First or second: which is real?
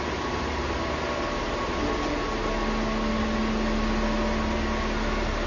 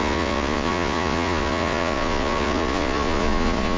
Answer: first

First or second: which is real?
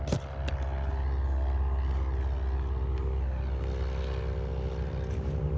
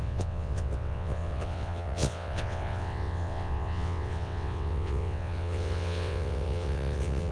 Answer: first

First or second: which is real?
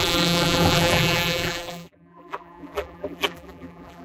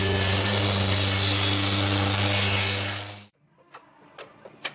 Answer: second